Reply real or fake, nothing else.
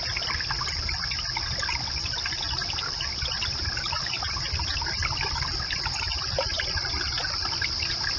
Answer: real